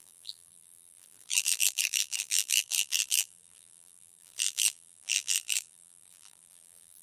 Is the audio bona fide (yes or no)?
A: no